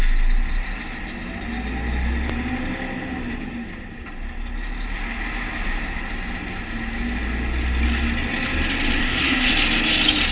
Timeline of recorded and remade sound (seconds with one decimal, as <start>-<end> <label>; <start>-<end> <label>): 0.0-9.0 recorded; 9.0-9.5 remade; 9.5-10.3 recorded